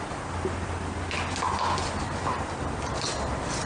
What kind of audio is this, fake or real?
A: real